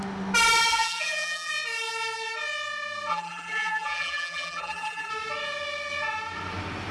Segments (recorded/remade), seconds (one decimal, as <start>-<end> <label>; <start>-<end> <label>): 0.0-0.7 recorded; 0.7-1.5 remade; 1.5-3.1 recorded; 3.1-5.1 remade; 5.1-6.9 recorded